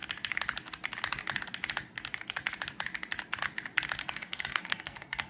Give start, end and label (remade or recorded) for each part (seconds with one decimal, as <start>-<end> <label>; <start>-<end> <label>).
0.0-4.0 recorded; 4.0-5.3 remade

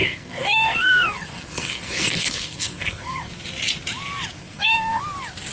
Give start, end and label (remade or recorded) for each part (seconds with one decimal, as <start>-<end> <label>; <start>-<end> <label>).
0.0-3.3 remade; 3.3-4.4 recorded; 4.4-5.0 remade; 5.0-5.5 recorded

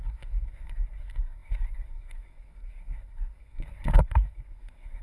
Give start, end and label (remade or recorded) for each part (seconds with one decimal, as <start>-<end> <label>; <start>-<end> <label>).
0.0-5.0 remade

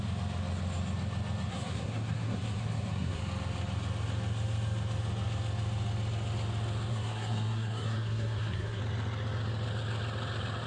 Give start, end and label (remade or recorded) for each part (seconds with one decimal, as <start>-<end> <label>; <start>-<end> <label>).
0.0-1.5 recorded; 1.5-3.2 remade; 3.2-6.9 recorded; 6.9-8.8 remade; 8.8-10.7 recorded

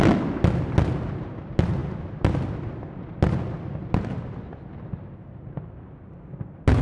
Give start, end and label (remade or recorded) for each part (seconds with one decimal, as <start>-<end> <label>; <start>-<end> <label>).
0.0-6.8 recorded

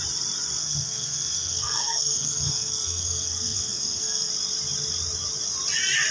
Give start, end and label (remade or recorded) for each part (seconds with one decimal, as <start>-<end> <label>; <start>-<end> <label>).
0.0-0.6 recorded; 0.6-4.3 remade; 4.3-6.1 recorded

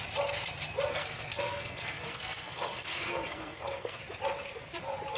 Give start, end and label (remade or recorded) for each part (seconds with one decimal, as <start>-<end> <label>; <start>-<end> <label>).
0.0-0.9 recorded; 0.9-4.0 remade; 4.0-5.2 recorded